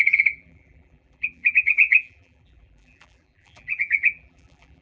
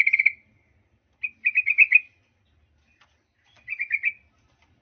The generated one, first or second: first